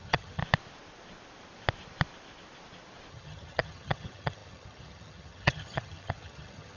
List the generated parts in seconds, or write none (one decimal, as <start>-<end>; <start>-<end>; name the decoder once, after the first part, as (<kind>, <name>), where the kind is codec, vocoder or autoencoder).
0.0-0.4 (vocoder, HiFi-GAN); 3.1-6.8